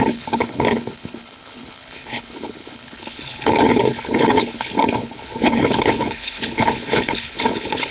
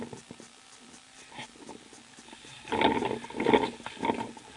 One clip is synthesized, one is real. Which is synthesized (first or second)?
first